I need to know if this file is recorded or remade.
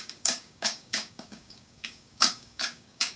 remade